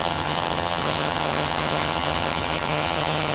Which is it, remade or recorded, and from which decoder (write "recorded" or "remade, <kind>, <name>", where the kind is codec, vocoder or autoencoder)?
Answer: remade, vocoder, HiFi-GAN